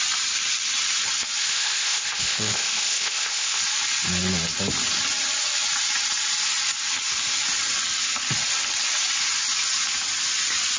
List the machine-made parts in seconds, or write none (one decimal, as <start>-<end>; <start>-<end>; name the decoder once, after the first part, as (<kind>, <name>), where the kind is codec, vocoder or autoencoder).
1.4-3.6 (codec, ZipCodec)